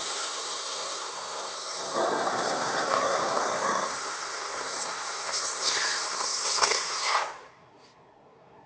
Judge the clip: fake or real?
fake